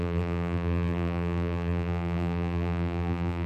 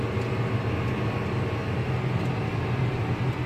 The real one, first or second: second